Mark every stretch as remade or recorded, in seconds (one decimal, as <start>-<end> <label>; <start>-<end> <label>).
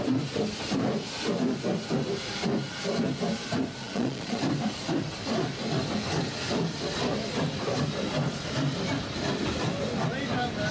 0.0-3.8 recorded; 3.8-4.4 remade; 4.4-10.7 recorded